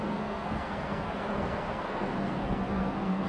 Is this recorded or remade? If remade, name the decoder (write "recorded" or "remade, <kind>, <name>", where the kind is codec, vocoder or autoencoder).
remade, codec, SNAC